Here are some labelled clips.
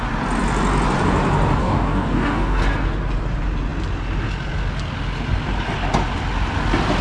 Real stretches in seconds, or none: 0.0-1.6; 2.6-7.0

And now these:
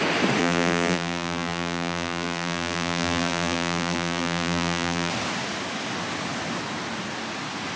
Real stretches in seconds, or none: 0.0-0.4; 5.1-7.8